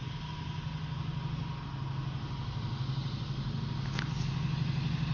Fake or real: real